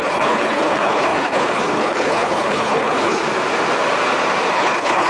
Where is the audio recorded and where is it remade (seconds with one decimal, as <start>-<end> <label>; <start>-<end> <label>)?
0.0-3.2 remade; 3.2-4.5 recorded; 4.5-5.1 remade